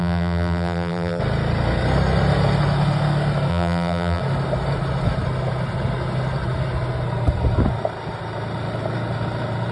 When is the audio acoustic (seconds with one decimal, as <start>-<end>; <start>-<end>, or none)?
1.2-3.5; 4.2-9.7